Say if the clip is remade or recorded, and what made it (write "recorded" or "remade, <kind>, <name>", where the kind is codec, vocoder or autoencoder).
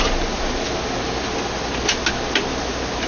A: recorded